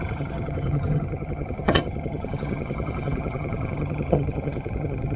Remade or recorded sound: remade